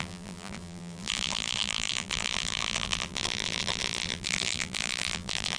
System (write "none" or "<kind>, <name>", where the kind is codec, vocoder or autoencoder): vocoder, BigVGAN v2